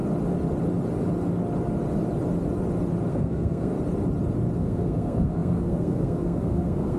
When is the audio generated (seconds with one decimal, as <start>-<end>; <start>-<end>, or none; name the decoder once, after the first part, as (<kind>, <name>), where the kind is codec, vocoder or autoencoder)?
3.1-3.7 (codec, SNAC); 4.6-7.0